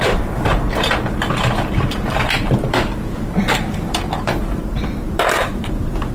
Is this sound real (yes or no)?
no